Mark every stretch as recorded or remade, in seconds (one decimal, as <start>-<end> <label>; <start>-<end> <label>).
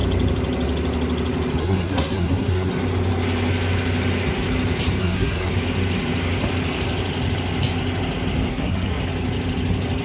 0.0-1.6 recorded; 1.6-2.7 remade; 2.7-5.0 recorded; 5.0-5.5 remade; 5.5-8.5 recorded; 8.5-9.0 remade; 9.0-10.0 recorded